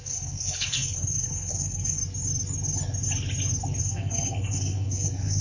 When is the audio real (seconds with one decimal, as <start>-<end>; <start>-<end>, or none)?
2.0-3.8

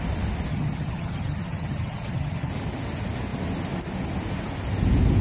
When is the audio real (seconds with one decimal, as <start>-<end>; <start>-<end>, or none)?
0.0-0.5; 2.5-5.2